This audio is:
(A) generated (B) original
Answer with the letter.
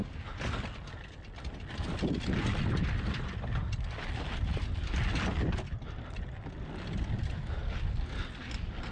B